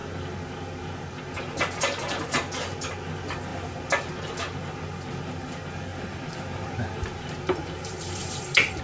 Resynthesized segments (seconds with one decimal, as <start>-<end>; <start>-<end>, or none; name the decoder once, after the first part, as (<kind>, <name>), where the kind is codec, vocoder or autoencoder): 5.9-8.8 (vocoder, BigVGAN v2)